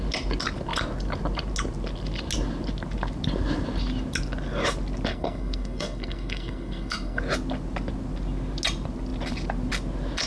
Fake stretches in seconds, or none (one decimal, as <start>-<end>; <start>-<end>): 5.1-7.2